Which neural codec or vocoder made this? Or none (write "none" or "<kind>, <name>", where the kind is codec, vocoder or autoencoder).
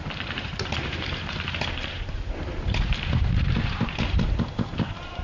vocoder, BigVGAN v2